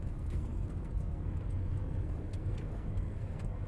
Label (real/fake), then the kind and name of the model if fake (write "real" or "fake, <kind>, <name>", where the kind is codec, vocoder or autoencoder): fake, codec, SNAC